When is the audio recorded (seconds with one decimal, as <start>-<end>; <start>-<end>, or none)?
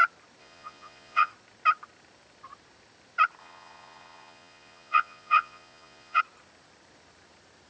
0.0-0.4; 1.3-3.4; 6.2-7.7